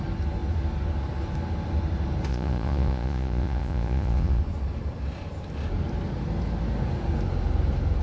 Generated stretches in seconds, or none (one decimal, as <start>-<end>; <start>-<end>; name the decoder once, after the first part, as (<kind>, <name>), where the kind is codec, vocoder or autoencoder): 2.3-4.4 (vocoder, Vocos)